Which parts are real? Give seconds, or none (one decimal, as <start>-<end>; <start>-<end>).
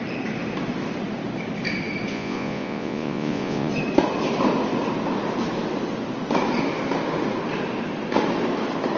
0.0-2.1; 3.7-9.0